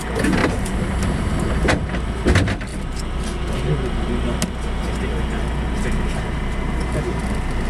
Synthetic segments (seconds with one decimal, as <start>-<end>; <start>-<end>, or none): 0.4-1.5